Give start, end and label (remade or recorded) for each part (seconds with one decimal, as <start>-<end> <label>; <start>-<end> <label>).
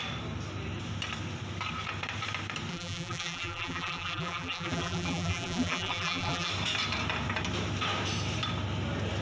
0.0-2.7 recorded; 2.7-6.5 remade; 6.5-9.2 recorded